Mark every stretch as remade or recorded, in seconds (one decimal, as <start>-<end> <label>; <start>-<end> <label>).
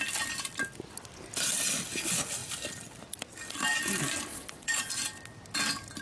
0.0-4.3 recorded; 4.3-4.9 remade; 4.9-6.0 recorded